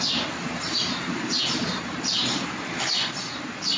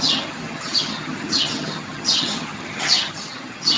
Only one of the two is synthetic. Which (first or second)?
second